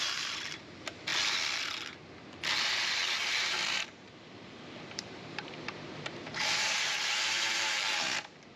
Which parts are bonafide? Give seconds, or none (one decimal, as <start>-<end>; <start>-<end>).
1.1-2.6